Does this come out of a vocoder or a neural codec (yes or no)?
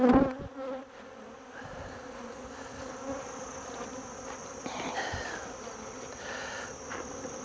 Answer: no